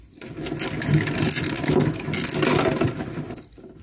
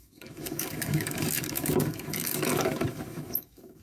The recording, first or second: first